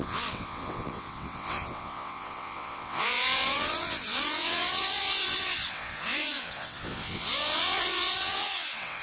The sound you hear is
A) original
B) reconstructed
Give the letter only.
B